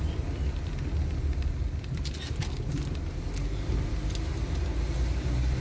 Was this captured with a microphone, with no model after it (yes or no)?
yes